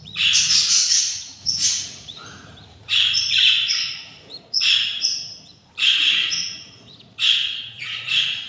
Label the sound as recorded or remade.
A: remade